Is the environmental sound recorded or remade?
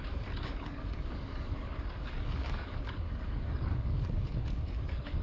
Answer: remade